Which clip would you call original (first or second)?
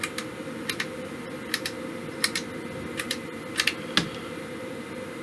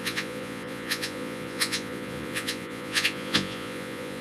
first